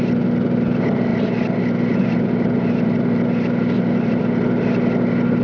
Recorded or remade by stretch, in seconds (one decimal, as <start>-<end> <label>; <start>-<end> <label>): 0.0-5.4 recorded